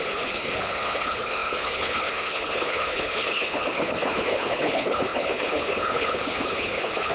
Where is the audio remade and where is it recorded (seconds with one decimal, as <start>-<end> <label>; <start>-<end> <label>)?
0.0-7.1 remade